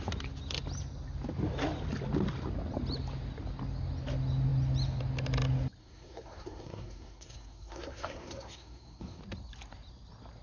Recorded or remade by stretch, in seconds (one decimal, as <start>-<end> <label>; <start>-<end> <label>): 0.0-5.8 recorded; 5.8-9.2 remade; 9.2-10.4 recorded